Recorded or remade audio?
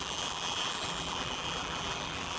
remade